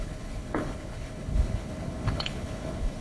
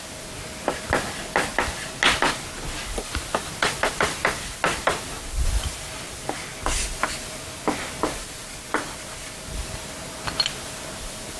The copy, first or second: first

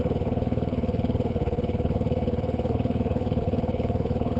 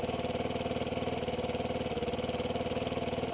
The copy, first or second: first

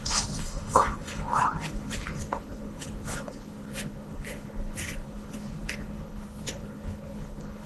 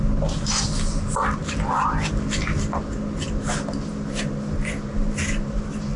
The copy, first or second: first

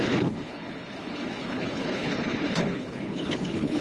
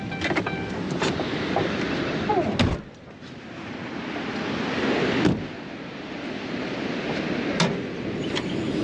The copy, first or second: first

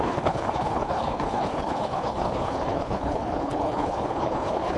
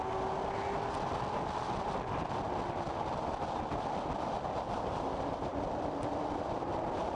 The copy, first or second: first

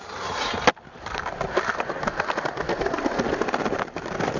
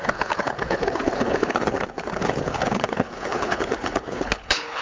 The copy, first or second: second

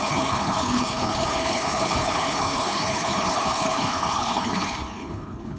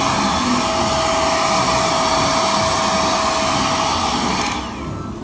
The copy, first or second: first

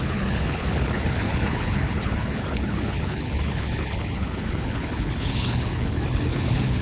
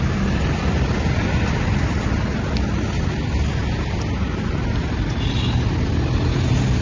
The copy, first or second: first